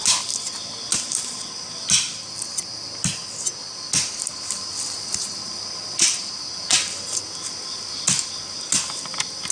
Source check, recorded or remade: recorded